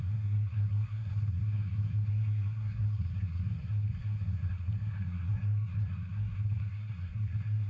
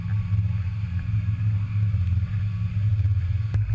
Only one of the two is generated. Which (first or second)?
first